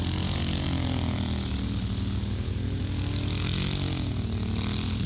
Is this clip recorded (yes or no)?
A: yes